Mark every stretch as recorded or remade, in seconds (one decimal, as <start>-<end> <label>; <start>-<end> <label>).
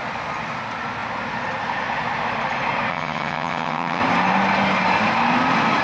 0.0-2.9 recorded; 2.9-4.0 remade; 4.0-5.8 recorded